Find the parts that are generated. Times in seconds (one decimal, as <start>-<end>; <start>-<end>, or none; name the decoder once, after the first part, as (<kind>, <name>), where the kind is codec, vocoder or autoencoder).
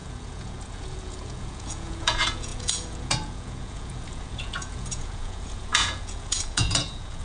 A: 0.0-7.2 (vocoder, Vocos)